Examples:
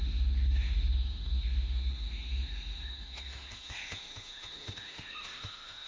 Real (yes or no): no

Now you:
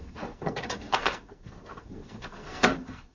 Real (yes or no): no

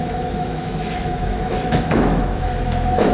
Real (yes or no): no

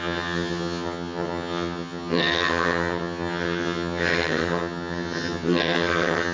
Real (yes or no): no